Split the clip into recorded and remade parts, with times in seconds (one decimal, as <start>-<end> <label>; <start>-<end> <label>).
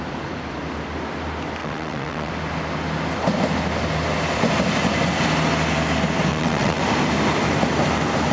0.0-1.6 recorded; 1.6-2.3 remade; 2.3-6.3 recorded; 6.3-6.8 remade; 6.8-8.3 recorded